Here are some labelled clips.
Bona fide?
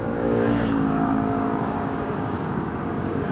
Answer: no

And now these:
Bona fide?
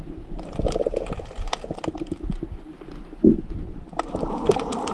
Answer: yes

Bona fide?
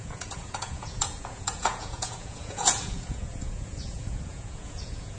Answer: no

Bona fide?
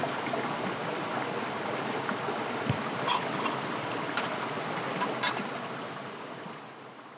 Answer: yes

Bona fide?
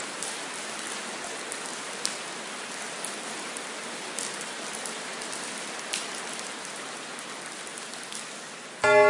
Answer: yes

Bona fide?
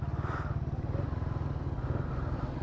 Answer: yes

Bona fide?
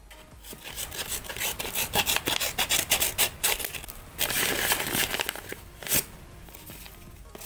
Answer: yes